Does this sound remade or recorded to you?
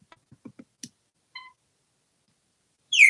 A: recorded